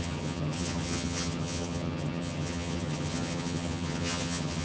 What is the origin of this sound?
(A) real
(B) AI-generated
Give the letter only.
B